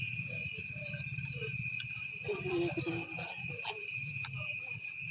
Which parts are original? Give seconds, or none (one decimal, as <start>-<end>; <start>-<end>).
0.4-3.5